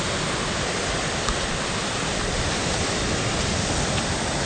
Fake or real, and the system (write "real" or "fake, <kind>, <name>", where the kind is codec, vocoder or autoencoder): real